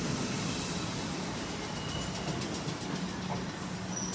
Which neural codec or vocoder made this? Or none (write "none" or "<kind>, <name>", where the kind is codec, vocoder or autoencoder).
none